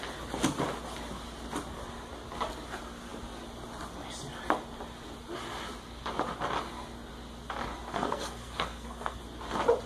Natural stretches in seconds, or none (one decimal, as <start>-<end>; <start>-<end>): 0.0-7.9; 9.2-9.9